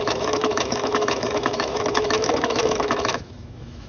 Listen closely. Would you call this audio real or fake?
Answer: fake